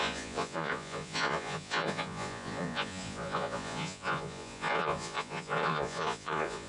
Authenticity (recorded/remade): remade